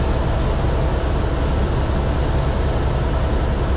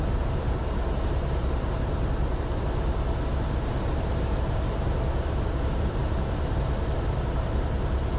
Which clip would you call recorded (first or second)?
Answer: first